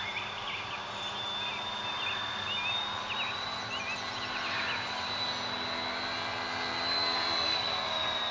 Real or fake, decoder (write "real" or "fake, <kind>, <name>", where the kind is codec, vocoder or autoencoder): real